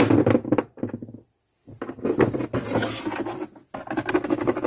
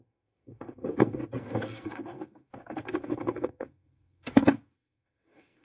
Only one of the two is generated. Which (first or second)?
second